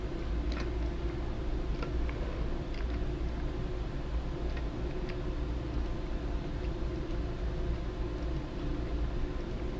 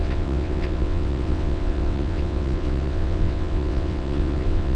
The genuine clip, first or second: first